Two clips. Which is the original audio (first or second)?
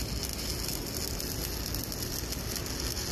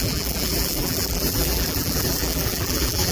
first